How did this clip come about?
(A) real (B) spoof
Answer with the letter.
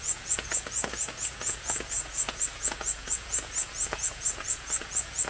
B